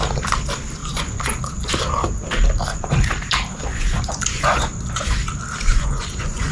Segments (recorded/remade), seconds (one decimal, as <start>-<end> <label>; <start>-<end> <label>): 0.0-0.8 recorded; 0.8-1.7 remade; 1.7-3.7 recorded; 3.7-5.1 remade; 5.1-5.7 recorded; 5.7-6.5 remade